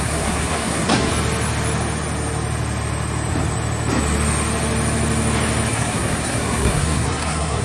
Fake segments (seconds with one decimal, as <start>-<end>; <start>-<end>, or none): 0.0-1.1; 5.7-7.6